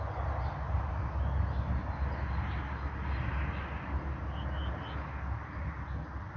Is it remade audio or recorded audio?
recorded